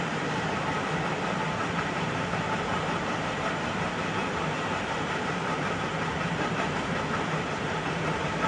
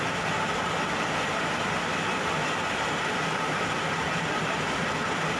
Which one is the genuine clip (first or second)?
second